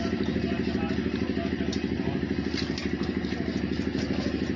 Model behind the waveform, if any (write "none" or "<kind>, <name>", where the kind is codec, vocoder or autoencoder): none